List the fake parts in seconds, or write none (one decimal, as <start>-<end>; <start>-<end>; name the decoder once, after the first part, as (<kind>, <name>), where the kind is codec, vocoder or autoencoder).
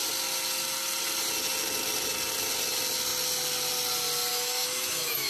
4.3-5.3 (autoencoder, DAC-VAE)